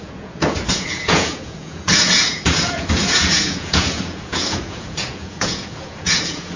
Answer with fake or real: fake